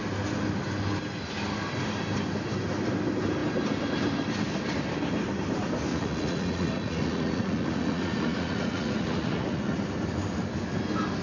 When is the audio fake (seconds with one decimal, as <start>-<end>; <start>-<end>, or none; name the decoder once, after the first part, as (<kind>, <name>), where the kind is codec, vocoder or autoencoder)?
5.9-9.8 (vocoder, Vocos)